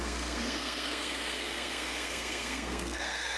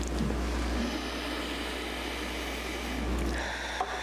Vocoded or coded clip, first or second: first